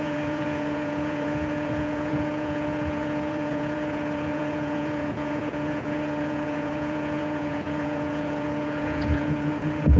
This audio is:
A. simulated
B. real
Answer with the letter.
A